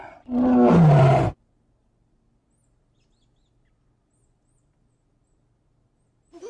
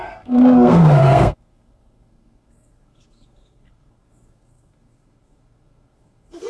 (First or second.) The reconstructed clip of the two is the second